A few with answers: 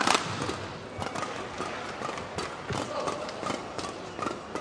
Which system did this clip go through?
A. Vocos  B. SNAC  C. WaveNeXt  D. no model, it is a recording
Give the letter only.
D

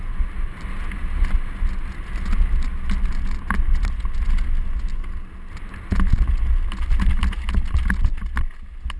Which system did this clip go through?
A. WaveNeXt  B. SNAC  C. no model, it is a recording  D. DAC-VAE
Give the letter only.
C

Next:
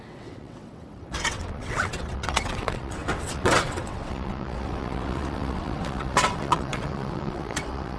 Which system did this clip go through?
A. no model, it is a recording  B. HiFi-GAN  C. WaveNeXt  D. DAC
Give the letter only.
C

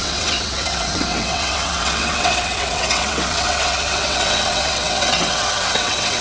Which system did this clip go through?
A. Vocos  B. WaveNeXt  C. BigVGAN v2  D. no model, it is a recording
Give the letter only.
B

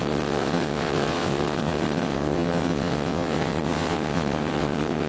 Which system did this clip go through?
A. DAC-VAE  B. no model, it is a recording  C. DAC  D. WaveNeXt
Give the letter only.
D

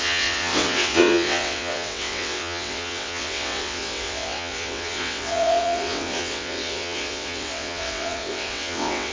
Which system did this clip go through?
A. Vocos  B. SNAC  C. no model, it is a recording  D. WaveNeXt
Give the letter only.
D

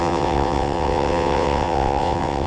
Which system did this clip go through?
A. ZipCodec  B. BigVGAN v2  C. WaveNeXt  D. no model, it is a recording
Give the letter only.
C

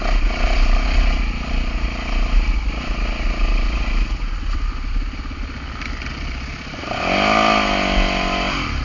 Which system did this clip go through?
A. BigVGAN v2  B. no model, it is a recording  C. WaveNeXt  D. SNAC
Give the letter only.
B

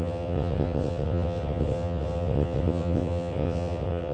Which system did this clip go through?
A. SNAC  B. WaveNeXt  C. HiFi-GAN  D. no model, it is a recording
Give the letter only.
B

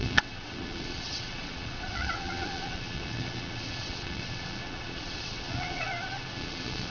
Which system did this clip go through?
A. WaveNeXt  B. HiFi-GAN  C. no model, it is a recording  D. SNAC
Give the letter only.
A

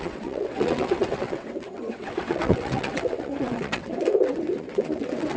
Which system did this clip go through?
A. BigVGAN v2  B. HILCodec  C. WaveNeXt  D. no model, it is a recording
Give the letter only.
C